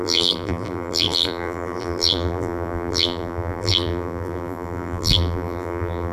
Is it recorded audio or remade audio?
remade